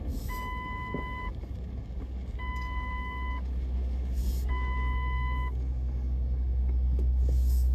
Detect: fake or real fake